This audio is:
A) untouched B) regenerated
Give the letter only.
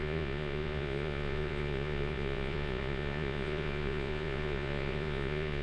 B